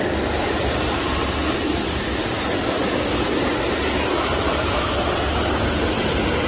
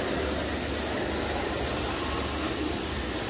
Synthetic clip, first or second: first